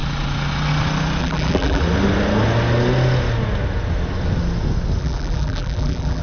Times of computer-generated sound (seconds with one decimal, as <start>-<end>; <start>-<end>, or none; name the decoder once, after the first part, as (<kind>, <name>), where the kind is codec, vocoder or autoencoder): 1.2-1.8 (vocoder, BigVGAN v2); 5.0-6.2